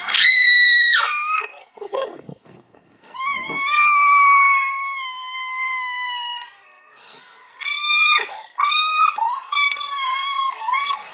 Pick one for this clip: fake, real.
fake